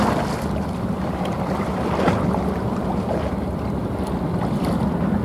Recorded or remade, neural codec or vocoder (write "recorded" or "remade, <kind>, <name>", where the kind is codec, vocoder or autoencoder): recorded